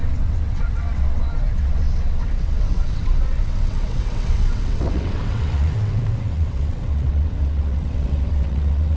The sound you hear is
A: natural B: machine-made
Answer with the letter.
B